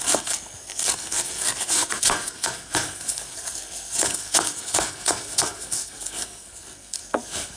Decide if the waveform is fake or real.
fake